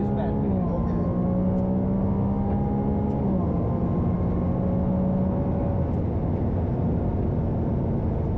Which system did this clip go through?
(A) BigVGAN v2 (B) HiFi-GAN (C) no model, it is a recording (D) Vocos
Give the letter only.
C